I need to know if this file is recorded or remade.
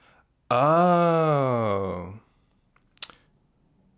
recorded